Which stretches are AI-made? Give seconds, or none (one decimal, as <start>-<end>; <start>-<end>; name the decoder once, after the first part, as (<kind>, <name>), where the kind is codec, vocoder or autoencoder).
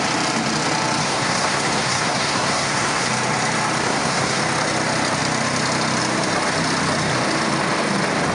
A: 1.0-3.1 (codec, SNAC); 3.8-4.4